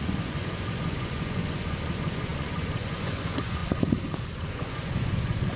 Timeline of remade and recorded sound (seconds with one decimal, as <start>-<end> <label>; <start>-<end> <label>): 0.0-5.6 remade